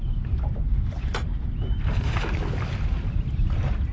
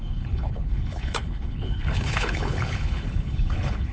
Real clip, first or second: first